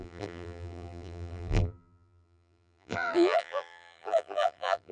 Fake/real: fake